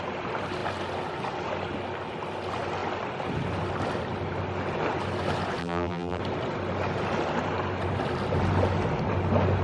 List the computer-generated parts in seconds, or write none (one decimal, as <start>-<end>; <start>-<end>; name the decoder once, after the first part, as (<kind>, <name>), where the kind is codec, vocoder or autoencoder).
5.6-6.2 (vocoder, BigVGAN v2)